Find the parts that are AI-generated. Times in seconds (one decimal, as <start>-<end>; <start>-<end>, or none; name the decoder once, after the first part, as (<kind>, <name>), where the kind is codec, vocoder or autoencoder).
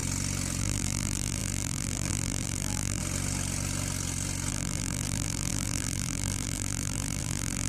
0.6-3.0 (vocoder, BigVGAN v2); 4.5-7.7